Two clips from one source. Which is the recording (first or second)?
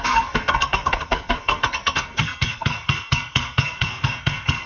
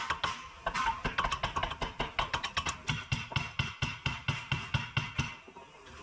second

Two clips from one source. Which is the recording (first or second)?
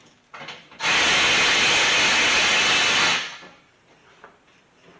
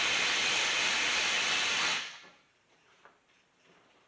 first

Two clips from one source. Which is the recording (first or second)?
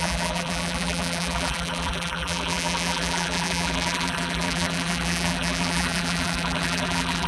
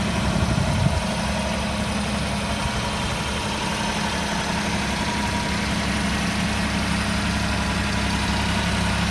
second